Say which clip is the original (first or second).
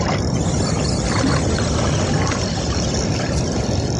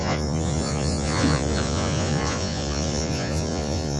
first